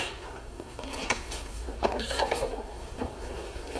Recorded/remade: remade